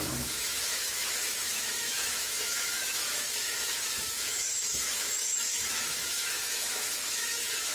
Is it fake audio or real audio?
fake